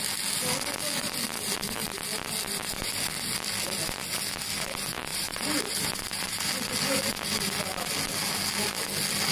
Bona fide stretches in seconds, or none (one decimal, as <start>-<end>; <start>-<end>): 0.0-5.1; 6.5-9.3